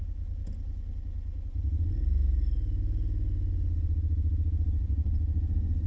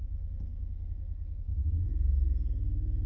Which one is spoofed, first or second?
second